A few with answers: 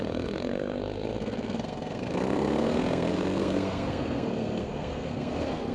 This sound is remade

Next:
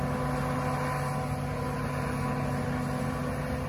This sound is recorded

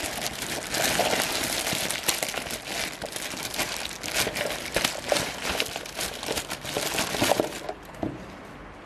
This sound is remade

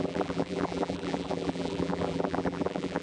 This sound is remade